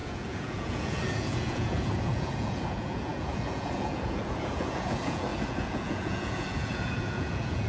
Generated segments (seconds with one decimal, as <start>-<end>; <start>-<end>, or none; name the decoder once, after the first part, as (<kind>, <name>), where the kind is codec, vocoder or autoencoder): 0.0-7.7 (vocoder, Vocos)